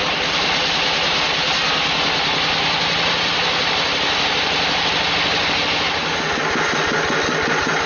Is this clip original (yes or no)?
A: yes